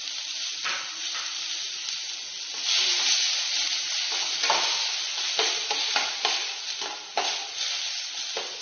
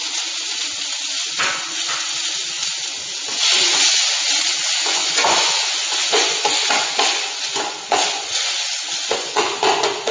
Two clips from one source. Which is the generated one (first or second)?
second